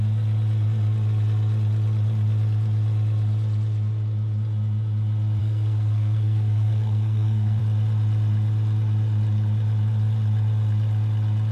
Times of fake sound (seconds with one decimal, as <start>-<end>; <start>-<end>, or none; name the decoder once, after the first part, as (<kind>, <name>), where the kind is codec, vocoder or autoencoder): 5.4-7.6 (codec, SNAC)